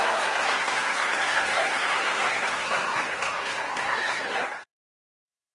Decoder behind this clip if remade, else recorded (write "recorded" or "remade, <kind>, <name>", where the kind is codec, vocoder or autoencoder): remade, codec, SNAC